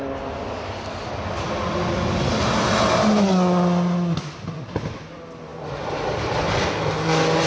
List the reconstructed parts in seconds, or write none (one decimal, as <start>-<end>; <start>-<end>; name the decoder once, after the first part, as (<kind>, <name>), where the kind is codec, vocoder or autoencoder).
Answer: none